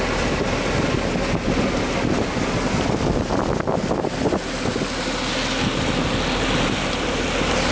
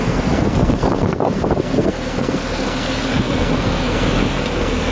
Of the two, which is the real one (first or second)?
first